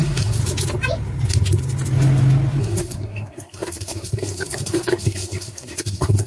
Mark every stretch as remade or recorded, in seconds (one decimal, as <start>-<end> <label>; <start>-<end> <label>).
0.0-0.4 remade; 0.4-2.6 recorded; 2.6-6.3 remade